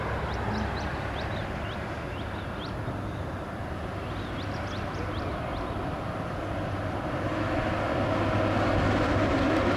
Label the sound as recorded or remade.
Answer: recorded